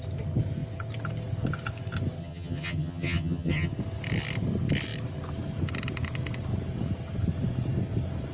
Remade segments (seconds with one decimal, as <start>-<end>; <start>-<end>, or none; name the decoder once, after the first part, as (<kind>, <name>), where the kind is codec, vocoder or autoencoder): 2.2-3.7 (vocoder, HiFi-GAN)